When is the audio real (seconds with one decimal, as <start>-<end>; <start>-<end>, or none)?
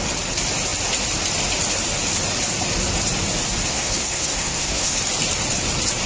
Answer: 0.0-3.7; 5.0-6.1